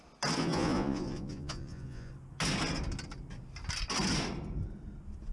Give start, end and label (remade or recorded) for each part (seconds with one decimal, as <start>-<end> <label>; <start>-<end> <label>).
0.0-0.4 recorded; 0.4-2.1 remade; 2.1-5.3 recorded